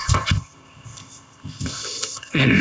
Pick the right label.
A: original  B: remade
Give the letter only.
B